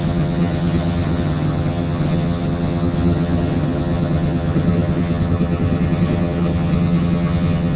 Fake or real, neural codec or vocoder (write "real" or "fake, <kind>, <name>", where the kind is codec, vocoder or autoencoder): fake, vocoder, HiFi-GAN